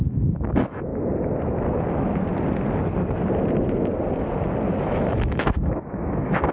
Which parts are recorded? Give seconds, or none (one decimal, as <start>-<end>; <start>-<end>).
0.9-4.8